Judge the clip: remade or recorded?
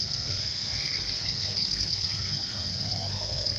remade